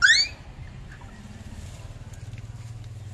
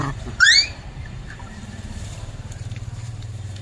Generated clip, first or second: second